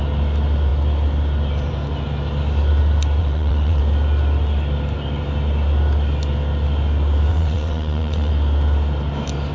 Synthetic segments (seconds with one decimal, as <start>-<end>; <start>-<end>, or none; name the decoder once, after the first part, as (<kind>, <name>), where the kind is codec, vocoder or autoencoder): 3.2-3.8 (vocoder, WaveNeXt); 7.3-8.3